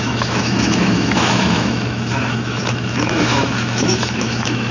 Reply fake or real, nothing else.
fake